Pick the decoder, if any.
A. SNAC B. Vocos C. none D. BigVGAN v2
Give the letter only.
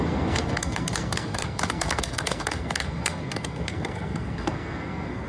A